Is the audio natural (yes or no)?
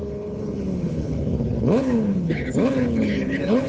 no